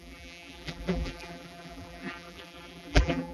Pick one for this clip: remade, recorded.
remade